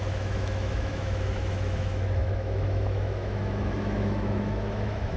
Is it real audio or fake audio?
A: fake